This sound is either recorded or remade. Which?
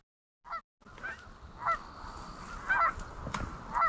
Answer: recorded